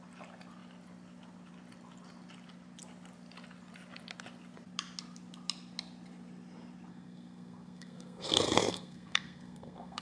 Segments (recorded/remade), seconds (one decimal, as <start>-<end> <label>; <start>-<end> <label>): 0.0-6.9 recorded; 6.9-10.0 remade